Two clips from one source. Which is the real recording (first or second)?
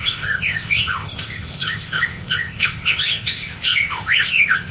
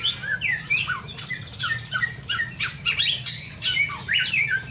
second